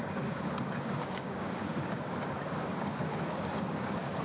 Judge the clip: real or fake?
fake